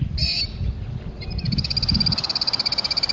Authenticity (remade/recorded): recorded